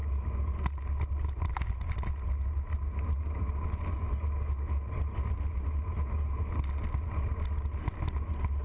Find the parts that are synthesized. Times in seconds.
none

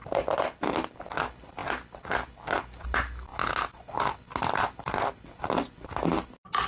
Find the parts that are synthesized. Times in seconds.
none

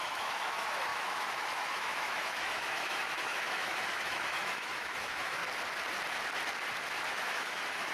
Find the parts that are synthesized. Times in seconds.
0.0-5.4; 7.1-7.9

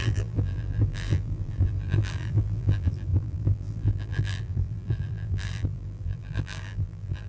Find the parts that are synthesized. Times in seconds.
0.0-7.3

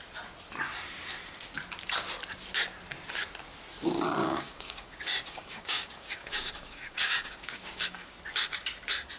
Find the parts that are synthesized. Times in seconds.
4.2-8.0

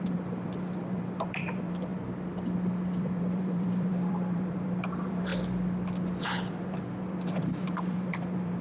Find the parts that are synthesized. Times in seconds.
0.0-1.9; 3.0-5.3; 6.5-8.6

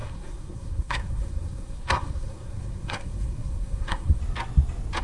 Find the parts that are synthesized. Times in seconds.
0.0-4.2

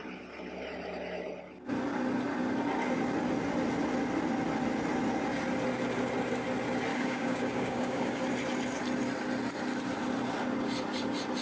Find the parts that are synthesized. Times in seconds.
6.9-8.2